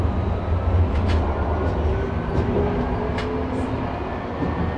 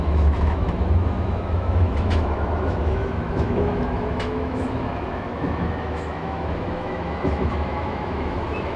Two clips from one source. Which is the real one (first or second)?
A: first